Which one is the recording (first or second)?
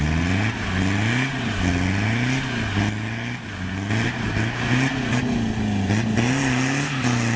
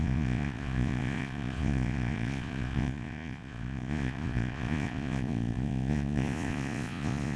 first